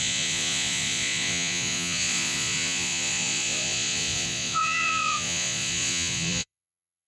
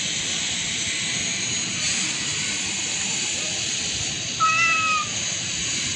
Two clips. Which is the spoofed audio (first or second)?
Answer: first